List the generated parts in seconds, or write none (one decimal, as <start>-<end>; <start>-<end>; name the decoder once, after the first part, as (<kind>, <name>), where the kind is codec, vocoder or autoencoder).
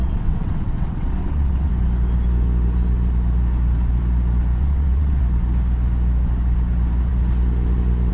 0.0-1.7 (vocoder, WaveNeXt); 4.6-5.2